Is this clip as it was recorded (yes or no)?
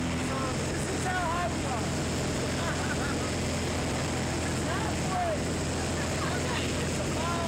yes